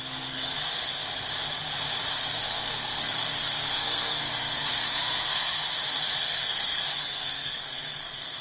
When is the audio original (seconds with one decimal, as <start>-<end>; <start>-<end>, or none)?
0.5-2.1; 5.6-6.2